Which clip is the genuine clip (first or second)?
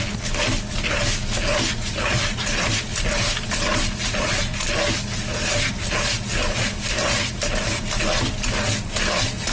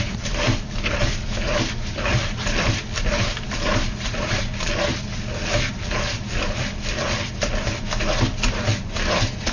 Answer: first